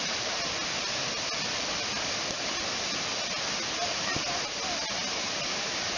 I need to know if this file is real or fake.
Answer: real